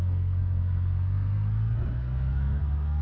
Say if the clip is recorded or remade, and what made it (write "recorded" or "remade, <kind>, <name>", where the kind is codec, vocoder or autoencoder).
remade, codec, SNAC